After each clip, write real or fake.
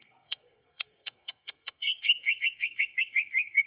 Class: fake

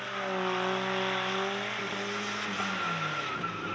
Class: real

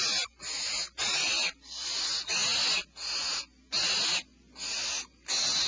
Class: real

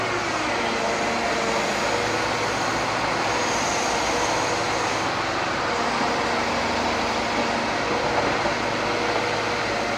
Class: real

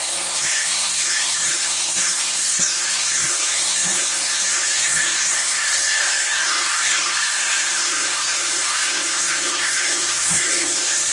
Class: fake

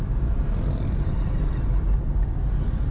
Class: real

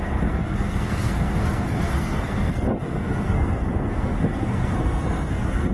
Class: fake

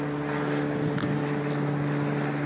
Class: real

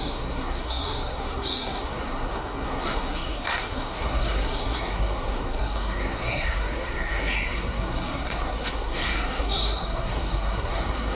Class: fake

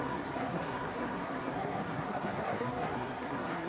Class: fake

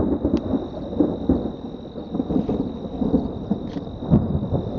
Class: real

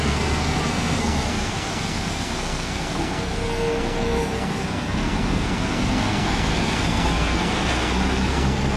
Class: fake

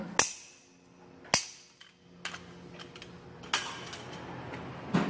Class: real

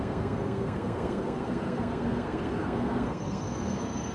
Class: fake